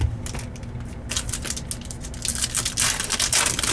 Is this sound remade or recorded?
recorded